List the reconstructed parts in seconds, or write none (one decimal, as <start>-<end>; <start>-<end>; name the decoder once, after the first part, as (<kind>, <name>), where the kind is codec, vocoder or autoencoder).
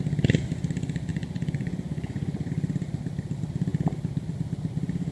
1.1-2.5 (vocoder, Vocos)